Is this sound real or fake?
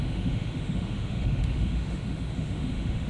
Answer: fake